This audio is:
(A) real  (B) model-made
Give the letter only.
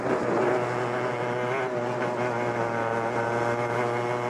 A